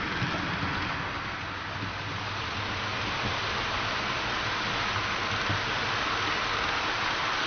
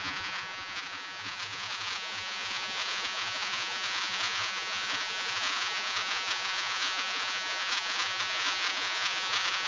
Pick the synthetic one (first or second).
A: second